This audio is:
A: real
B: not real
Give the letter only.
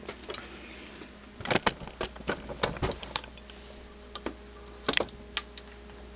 A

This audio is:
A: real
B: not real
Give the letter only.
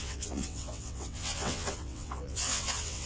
B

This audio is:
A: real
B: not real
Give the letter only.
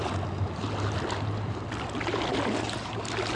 A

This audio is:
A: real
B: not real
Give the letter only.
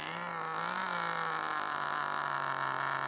A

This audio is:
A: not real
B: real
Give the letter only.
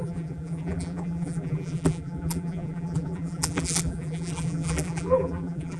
A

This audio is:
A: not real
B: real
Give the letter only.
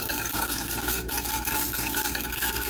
A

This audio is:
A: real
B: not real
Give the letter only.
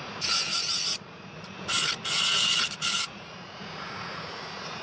B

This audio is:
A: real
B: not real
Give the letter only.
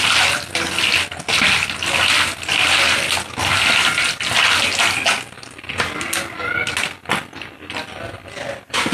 A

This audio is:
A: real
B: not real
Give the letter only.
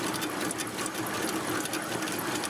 A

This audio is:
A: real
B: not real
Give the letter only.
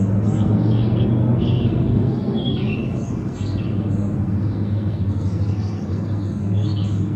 B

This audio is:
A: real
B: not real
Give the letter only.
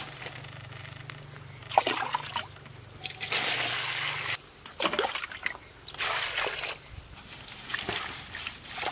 A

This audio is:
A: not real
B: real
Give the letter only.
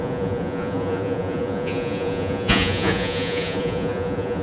A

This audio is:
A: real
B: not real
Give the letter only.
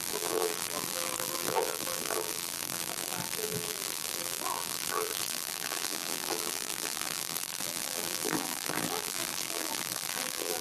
B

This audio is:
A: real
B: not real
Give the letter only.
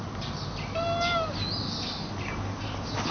A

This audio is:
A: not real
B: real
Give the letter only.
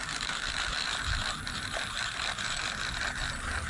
B